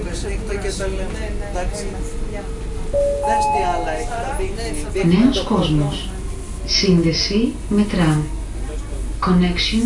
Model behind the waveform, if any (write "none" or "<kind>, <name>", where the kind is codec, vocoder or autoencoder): none